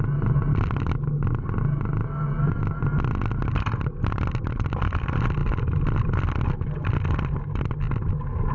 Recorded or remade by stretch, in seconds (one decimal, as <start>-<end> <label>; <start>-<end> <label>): 0.0-8.5 recorded